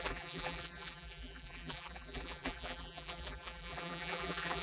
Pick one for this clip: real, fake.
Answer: fake